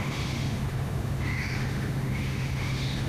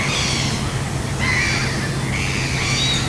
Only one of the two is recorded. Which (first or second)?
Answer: second